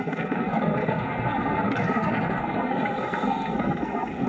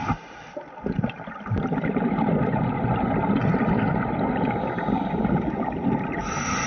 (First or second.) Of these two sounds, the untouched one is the second